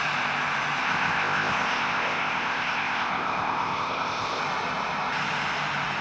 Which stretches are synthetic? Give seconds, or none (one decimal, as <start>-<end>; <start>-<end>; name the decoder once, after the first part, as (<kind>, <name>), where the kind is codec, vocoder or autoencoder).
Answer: 0.8-4.4 (codec, ZipCodec)